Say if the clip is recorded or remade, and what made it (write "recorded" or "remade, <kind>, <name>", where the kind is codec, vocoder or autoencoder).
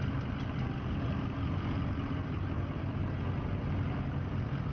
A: recorded